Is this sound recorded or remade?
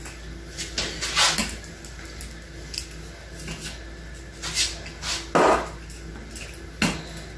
recorded